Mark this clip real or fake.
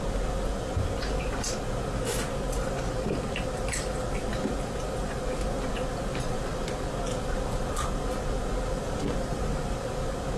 real